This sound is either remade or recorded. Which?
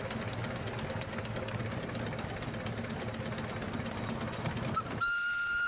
recorded